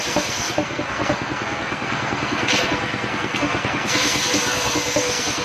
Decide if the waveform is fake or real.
fake